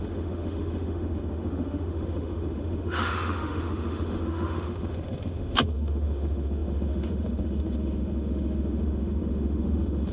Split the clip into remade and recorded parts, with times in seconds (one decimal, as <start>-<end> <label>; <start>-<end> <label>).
0.0-10.1 remade